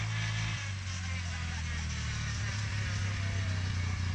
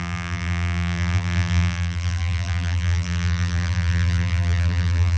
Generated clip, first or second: second